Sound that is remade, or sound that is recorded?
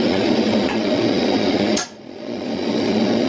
remade